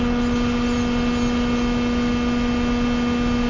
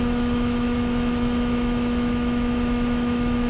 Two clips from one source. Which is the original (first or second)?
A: first